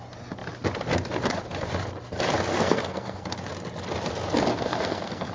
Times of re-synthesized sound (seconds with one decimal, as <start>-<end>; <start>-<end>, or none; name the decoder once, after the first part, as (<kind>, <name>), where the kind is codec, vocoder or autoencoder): 2.5-3.5 (codec, SNAC); 4.5-5.3